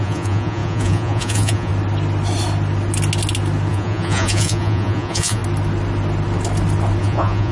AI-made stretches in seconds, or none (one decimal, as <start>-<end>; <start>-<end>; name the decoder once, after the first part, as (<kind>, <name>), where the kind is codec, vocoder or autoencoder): 0.0-1.7 (vocoder, Vocos); 3.7-5.4; 7.0-7.5